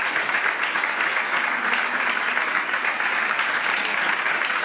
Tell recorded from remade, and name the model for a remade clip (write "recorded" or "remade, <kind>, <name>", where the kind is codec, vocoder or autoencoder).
recorded